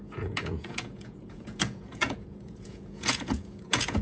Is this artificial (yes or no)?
yes